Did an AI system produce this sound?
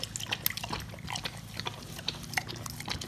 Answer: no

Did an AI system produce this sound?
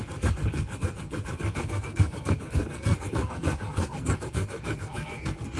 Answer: yes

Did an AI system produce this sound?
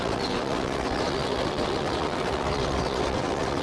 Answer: yes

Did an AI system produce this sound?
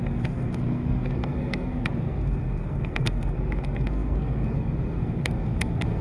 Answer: yes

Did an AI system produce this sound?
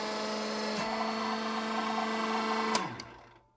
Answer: no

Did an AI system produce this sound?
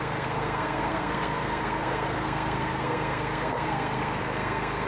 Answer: yes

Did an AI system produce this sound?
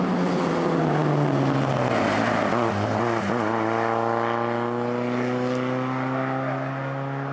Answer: no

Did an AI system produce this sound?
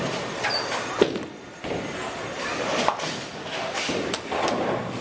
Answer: yes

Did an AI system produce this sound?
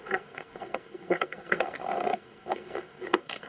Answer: yes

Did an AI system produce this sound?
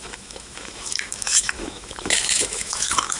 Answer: yes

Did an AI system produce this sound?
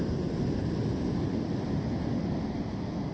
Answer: no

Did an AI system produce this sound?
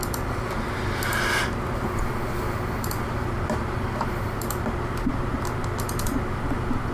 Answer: no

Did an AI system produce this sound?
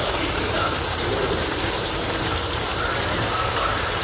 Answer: yes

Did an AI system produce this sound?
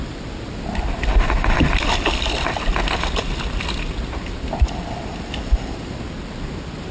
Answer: no